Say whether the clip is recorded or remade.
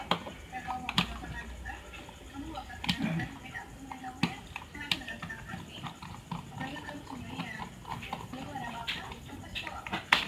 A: recorded